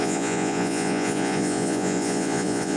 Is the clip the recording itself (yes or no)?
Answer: no